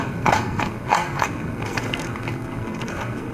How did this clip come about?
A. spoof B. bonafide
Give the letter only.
A